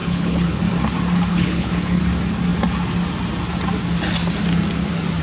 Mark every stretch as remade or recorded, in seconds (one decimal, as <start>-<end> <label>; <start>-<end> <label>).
0.0-0.6 remade; 0.6-1.3 recorded; 1.3-2.0 remade; 2.0-5.2 recorded